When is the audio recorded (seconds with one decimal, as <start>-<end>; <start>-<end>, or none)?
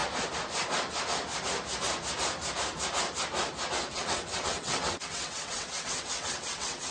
0.0-3.9